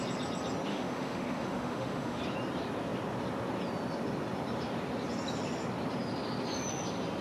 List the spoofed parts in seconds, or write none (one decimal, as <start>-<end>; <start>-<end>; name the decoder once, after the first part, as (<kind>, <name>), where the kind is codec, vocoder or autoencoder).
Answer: 0.7-2.2 (autoencoder, DAC-VAE)